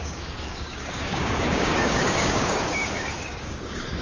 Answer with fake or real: fake